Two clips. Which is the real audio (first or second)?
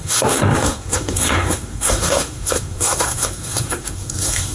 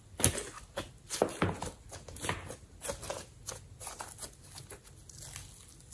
second